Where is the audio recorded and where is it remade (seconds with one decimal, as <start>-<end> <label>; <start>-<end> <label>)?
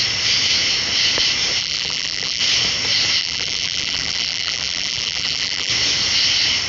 0.0-1.6 recorded; 1.6-2.4 remade; 2.4-3.2 recorded; 3.2-5.7 remade; 5.7-6.7 recorded